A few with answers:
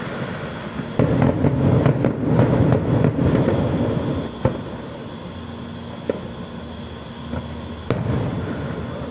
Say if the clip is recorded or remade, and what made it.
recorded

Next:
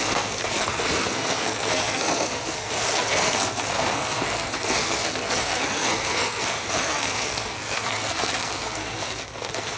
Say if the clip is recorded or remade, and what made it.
remade, codec, SNAC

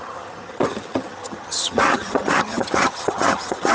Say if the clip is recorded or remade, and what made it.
remade, vocoder, HiFi-GAN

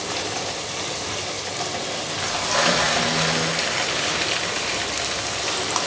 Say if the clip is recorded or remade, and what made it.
recorded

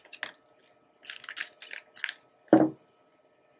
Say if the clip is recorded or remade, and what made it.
recorded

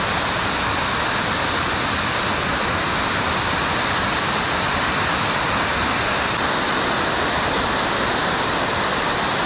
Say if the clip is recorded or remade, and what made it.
recorded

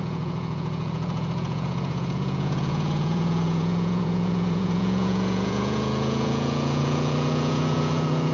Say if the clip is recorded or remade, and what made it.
remade, vocoder, Vocos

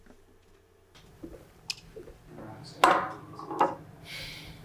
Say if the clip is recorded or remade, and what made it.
recorded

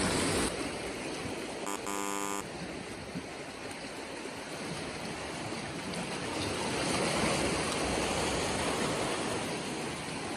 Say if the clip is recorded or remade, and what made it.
recorded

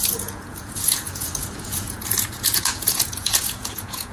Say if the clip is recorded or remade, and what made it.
remade, vocoder, Vocos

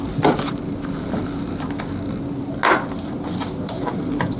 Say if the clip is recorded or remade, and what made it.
recorded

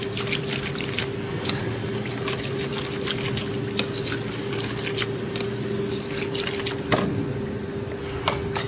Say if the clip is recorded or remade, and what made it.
recorded